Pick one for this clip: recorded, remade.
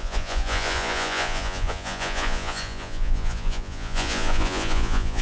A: remade